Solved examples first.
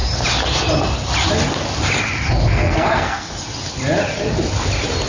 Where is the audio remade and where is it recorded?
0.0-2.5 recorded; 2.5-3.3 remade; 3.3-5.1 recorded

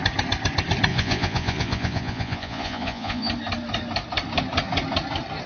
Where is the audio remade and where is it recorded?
0.0-0.9 recorded; 0.9-3.3 remade; 3.3-5.5 recorded

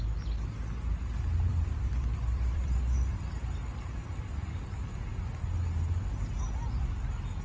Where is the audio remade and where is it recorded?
0.0-1.5 recorded; 1.5-2.7 remade; 2.7-7.4 recorded

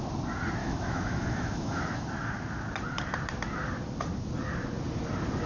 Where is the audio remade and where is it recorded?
0.0-0.6 recorded; 0.6-1.8 remade; 1.8-5.5 recorded